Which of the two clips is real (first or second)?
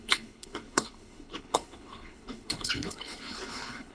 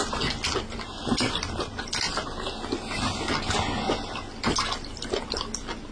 second